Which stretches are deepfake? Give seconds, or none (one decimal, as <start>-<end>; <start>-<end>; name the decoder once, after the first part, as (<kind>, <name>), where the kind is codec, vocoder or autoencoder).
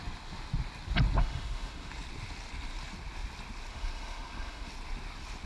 1.2-1.9 (autoencoder, DAC-VAE); 3.7-4.7